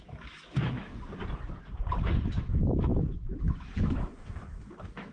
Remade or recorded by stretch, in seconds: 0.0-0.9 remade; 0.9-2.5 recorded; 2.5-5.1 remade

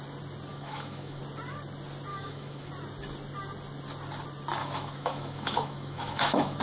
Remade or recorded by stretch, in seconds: 0.0-0.5 recorded; 0.5-1.2 remade; 1.2-2.1 recorded; 2.1-2.7 remade; 2.7-4.6 recorded; 4.6-6.6 remade

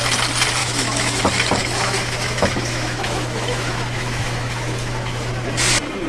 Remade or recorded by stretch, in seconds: 0.0-0.6 recorded; 0.6-1.2 remade; 1.2-1.6 recorded; 1.6-5.3 remade; 5.3-6.1 recorded

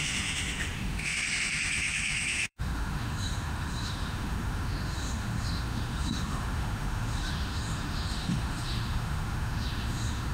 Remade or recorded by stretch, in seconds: 0.0-10.3 remade

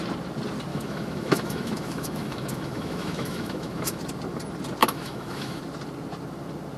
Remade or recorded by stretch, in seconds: 0.0-0.7 recorded; 0.7-4.0 remade; 4.0-4.8 recorded; 4.8-5.6 remade; 5.6-6.8 recorded

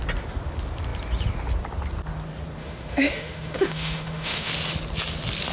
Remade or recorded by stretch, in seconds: 0.0-2.6 recorded; 2.6-4.5 remade; 4.5-5.5 recorded

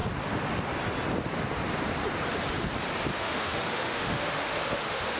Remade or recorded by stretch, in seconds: 0.0-3.1 recorded; 3.1-5.2 remade

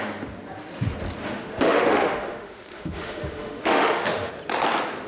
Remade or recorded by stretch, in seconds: 0.0-1.2 recorded; 1.2-4.3 remade; 4.3-5.1 recorded